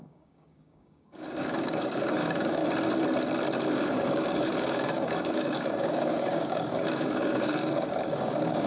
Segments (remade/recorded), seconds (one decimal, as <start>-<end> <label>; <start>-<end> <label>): 0.0-2.6 remade; 2.6-3.7 recorded; 3.7-8.7 remade